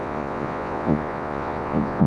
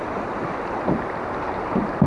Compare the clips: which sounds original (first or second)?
second